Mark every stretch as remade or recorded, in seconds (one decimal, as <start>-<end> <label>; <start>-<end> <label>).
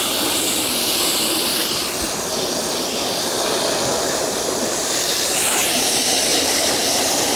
0.0-1.5 remade; 1.5-4.1 recorded; 4.1-7.4 remade